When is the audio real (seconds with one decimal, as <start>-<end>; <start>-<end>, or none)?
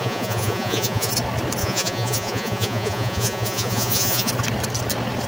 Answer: 1.1-1.6; 4.3-5.3